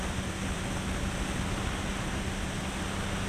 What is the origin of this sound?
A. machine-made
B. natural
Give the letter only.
B